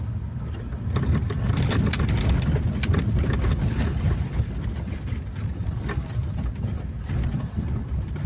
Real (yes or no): yes